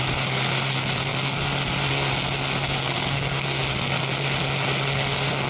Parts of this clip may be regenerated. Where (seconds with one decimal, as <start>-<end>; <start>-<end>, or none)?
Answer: 2.8-3.6